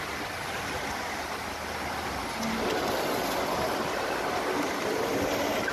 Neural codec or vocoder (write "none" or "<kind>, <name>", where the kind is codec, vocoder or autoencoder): none